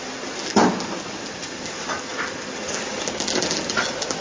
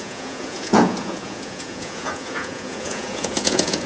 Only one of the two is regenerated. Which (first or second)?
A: second